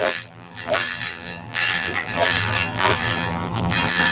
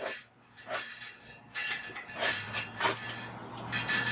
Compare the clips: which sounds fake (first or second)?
first